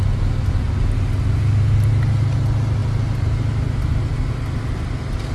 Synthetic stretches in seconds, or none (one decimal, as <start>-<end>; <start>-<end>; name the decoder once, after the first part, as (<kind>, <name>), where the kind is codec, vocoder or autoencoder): none